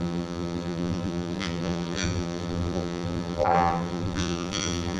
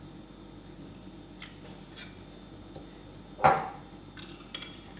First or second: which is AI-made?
first